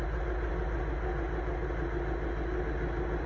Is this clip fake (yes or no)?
no